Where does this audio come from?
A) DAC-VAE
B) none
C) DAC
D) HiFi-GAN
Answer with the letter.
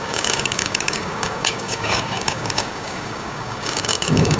C